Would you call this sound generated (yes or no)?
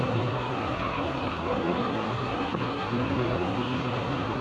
yes